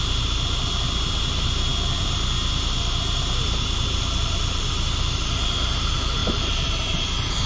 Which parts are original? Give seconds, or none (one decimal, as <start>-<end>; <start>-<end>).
none